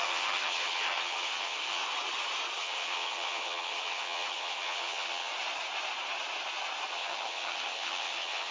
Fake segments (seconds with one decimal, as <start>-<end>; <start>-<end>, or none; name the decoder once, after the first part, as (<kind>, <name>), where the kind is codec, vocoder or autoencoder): 0.0-1.8 (vocoder, HiFi-GAN); 2.6-5.3; 6.9-8.5